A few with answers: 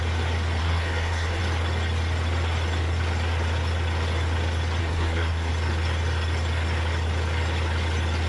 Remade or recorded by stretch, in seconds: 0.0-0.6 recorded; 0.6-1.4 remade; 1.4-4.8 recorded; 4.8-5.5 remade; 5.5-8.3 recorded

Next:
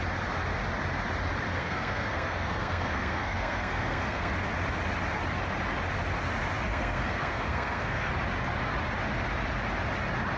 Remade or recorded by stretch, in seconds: 0.0-1.5 recorded; 1.5-4.3 remade; 4.3-6.7 recorded; 6.7-8.1 remade; 8.1-10.4 recorded

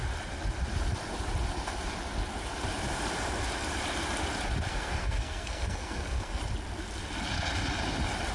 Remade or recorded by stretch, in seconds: 0.0-4.7 recorded; 4.7-6.4 remade; 6.4-8.3 recorded

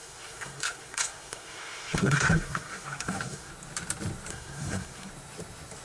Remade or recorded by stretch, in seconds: 0.0-3.5 remade; 3.5-4.3 recorded; 4.3-5.1 remade; 5.1-5.8 recorded

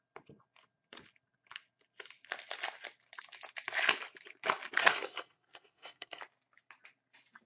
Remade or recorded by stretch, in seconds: 0.0-4.8 recorded; 4.8-6.2 remade; 6.2-7.5 recorded

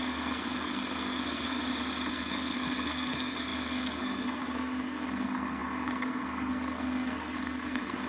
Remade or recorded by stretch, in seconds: 0.0-1.6 remade; 1.6-2.1 recorded; 2.1-8.1 remade